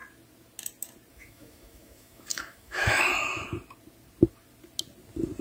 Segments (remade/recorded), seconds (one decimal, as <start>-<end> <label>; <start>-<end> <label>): 0.0-1.1 recorded; 1.1-3.1 remade; 3.1-5.4 recorded